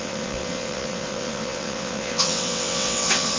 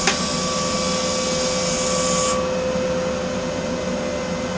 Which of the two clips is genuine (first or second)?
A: second